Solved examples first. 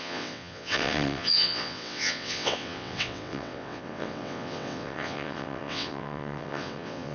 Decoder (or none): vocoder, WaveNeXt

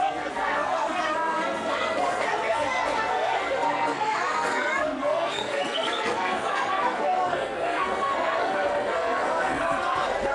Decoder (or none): codec, SNAC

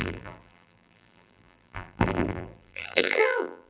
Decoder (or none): vocoder, BigVGAN v2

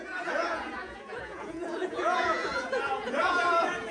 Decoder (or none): vocoder, Vocos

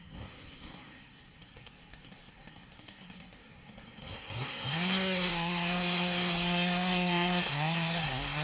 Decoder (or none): codec, SNAC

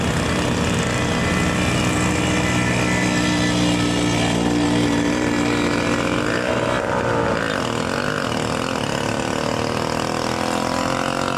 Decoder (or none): none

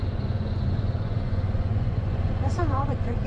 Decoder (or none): vocoder, Vocos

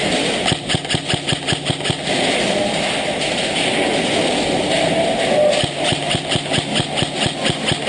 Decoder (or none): none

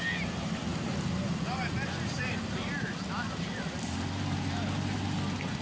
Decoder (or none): none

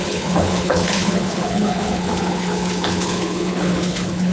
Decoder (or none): codec, HILCodec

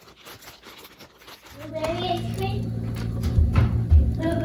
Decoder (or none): none